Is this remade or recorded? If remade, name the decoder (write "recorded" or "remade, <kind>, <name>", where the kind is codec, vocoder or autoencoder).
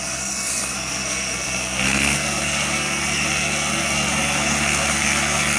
remade, codec, SNAC